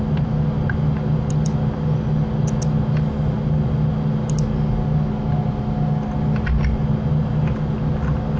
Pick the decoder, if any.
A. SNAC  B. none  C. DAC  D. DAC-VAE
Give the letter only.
B